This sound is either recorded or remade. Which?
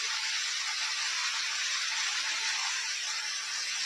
recorded